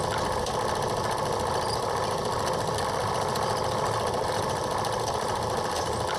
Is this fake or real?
real